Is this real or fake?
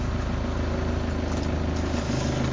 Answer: real